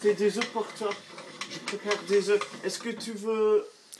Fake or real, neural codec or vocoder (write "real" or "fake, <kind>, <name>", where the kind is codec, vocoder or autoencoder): real